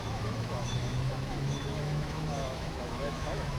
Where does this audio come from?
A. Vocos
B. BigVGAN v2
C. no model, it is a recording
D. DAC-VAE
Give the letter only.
D